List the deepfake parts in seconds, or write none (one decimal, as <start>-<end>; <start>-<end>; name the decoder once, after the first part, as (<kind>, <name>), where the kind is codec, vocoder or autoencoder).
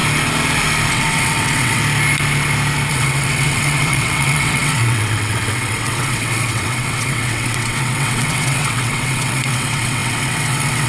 0.9-1.8 (vocoder, WaveNeXt); 2.9-10.9